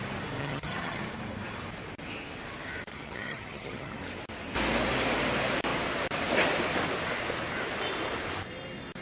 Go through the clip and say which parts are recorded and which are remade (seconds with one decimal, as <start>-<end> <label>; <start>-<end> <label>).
0.0-0.4 recorded; 0.4-1.0 remade; 1.0-2.9 recorded; 2.9-4.0 remade; 4.0-9.0 recorded